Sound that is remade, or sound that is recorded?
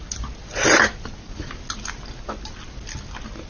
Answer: recorded